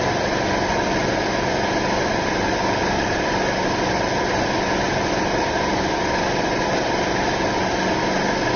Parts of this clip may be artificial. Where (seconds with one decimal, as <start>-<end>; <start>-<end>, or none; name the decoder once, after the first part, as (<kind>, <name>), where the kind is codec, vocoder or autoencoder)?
none